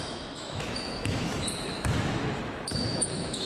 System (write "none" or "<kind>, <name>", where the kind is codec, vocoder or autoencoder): autoencoder, DAC-VAE